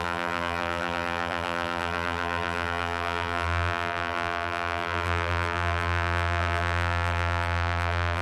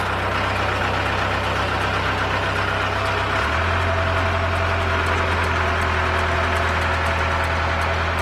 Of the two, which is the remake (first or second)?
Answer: first